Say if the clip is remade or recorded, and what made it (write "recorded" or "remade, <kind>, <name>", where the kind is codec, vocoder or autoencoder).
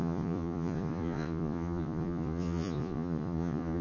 remade, vocoder, Vocos